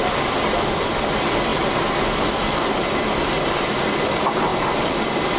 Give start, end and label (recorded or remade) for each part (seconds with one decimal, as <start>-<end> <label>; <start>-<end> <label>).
0.0-5.4 recorded